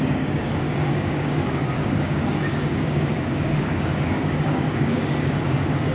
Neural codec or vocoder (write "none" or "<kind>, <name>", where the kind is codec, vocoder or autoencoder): codec, DAC